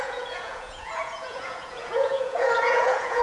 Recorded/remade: remade